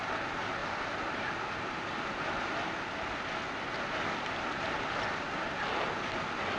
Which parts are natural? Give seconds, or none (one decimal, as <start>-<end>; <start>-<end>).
0.0-6.6